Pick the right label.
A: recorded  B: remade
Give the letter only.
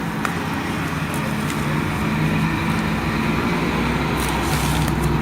A